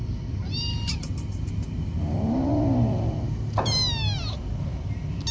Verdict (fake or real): real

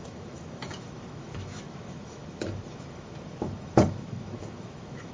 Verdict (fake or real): fake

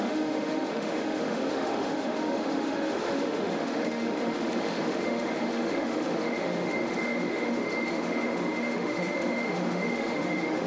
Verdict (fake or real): fake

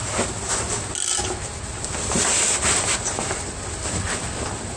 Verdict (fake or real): real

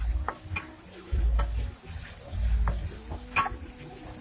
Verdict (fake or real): real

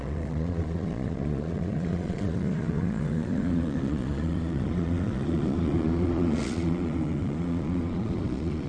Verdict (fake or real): fake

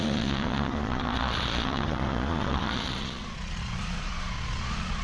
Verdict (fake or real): fake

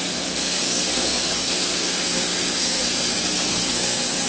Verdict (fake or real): fake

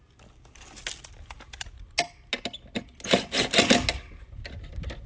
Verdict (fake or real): real